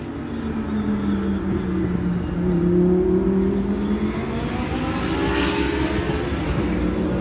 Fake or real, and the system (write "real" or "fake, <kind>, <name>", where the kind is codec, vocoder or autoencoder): real